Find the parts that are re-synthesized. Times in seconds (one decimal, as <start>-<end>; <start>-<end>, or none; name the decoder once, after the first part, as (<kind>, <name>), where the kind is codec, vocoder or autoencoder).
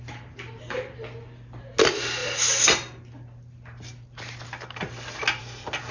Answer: none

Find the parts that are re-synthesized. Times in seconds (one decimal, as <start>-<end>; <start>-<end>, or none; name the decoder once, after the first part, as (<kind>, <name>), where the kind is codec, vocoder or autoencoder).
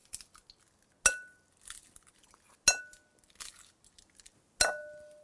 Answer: none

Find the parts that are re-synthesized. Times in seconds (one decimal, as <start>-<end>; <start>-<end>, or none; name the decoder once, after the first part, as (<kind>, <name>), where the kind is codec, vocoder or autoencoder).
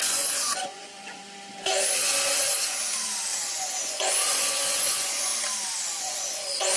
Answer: 0.0-1.2 (vocoder, Vocos); 2.6-5.3; 6.0-6.8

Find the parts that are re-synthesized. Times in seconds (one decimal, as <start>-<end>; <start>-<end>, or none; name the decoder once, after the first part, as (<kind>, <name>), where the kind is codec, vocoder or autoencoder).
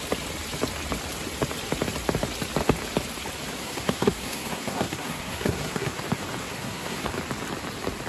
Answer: 3.6-6.0 (codec, SNAC); 6.4-7.1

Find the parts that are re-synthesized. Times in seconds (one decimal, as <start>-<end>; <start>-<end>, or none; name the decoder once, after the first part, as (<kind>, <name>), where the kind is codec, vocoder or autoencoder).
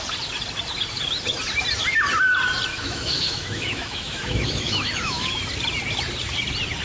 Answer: 2.7-5.4 (autoencoder, DAC-VAE)